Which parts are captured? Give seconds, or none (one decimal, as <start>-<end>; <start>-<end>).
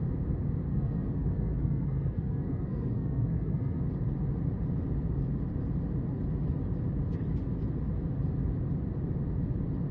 0.0-0.7; 3.8-9.9